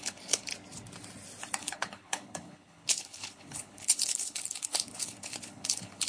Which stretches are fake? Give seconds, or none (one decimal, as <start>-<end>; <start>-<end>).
0.0-0.5; 1.6-6.1